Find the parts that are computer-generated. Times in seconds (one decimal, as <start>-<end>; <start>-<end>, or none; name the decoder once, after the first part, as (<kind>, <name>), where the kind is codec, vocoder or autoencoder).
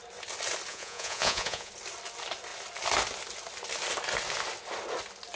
0.7-1.7 (vocoder, Vocos)